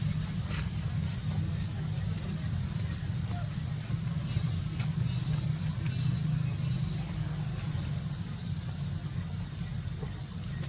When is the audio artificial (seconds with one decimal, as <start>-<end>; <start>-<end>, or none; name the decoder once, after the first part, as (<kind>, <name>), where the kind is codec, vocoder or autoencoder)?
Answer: none